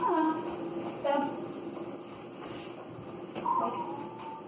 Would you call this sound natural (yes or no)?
yes